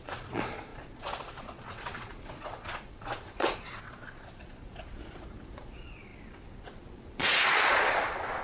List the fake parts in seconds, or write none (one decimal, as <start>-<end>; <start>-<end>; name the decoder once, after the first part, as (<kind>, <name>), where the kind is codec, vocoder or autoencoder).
0.0-8.4 (vocoder, Vocos)